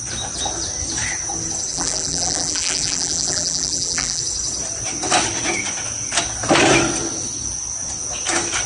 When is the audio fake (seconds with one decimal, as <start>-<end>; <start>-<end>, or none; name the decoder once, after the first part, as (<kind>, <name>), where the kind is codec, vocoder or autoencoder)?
1.7-4.2 (vocoder, BigVGAN v2)